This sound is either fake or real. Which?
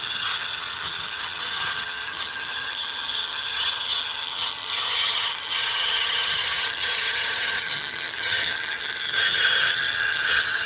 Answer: fake